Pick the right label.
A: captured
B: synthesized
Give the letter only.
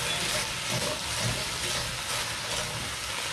A